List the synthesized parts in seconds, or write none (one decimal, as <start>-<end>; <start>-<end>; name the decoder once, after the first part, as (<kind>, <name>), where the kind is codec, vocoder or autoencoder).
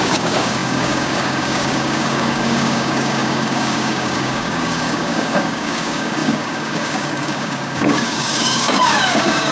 0.0-9.5 (codec, DAC)